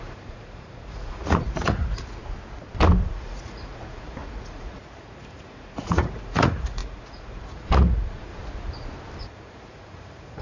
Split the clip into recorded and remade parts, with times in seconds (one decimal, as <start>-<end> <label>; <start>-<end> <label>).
0.0-2.2 remade; 2.2-3.1 recorded; 3.1-8.3 remade; 8.3-9.2 recorded; 9.2-10.4 remade